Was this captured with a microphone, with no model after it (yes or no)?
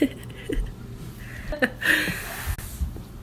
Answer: yes